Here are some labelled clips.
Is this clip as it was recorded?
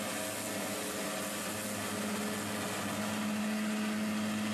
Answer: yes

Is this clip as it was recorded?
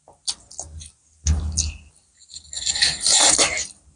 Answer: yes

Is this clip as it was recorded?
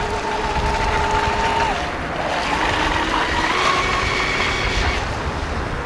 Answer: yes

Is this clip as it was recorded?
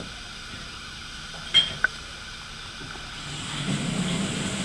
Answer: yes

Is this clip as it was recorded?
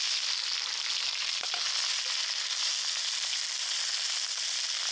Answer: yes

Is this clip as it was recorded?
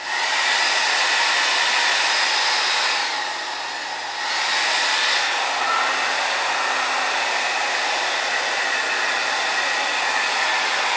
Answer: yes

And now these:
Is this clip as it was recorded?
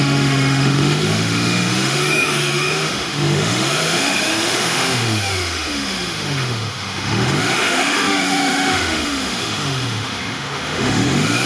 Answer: no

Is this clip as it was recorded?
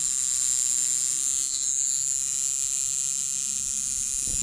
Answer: yes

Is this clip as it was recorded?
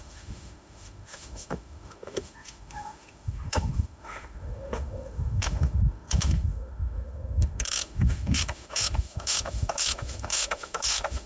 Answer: no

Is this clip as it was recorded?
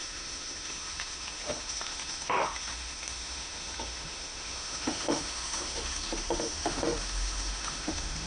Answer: no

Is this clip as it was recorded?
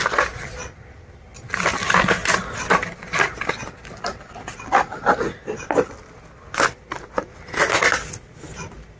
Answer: yes